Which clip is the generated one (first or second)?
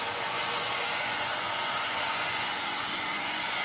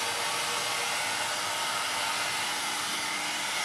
first